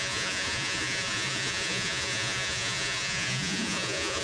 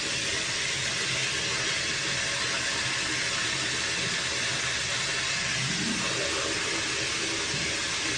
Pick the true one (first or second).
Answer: second